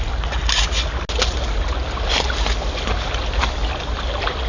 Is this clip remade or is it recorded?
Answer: recorded